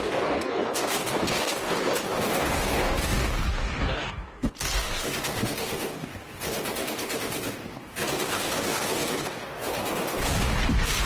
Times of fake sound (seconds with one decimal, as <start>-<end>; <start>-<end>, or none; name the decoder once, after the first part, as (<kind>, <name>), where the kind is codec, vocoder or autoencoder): 0.0-11.1 (codec, DAC)